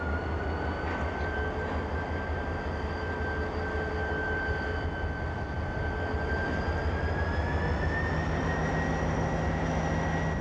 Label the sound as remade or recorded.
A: recorded